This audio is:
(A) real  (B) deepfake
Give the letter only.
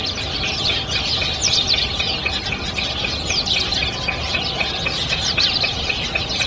A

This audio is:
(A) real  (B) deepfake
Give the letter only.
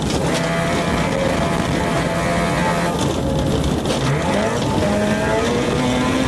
A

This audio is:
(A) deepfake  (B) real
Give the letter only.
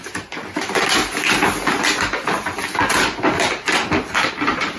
B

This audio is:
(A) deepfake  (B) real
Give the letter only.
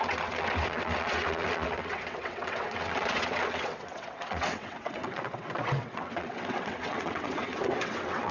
A